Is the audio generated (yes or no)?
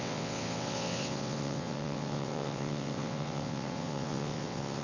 yes